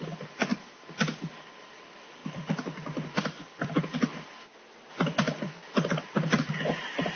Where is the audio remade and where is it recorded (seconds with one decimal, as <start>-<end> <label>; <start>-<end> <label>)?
0.0-7.2 recorded